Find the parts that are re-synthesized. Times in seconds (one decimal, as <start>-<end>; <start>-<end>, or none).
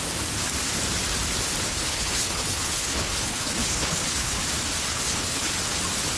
1.7-4.4; 4.9-5.5